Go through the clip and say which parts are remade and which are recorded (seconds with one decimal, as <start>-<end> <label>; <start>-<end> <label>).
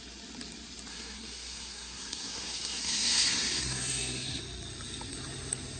0.0-0.9 recorded; 0.9-4.4 remade; 4.4-5.8 recorded